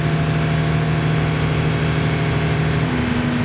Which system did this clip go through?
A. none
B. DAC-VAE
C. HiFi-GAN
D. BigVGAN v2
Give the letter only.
A